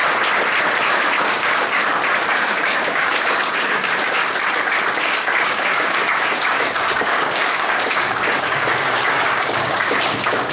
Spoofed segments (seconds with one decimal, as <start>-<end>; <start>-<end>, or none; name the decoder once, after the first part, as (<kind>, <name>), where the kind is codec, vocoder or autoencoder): 0.8-1.8 (codec, DAC); 2.3-4.2; 5.0-10.5